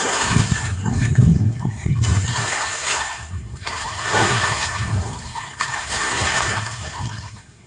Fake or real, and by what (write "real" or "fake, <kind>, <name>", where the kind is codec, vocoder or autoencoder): fake, codec, SNAC